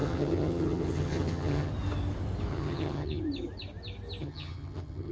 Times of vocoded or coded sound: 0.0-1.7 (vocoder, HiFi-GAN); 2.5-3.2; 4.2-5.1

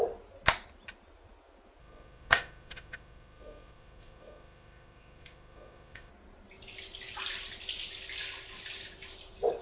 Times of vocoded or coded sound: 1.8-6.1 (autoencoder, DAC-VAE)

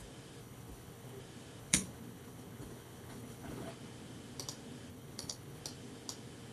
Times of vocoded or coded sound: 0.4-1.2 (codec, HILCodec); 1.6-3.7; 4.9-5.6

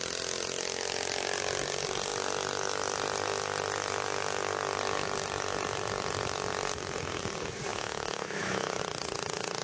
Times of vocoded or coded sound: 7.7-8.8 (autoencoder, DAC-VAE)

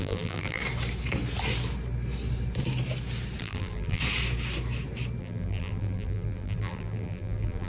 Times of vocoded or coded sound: 0.0-0.6 (vocoder, BigVGAN v2); 3.4-4.0; 5.2-7.7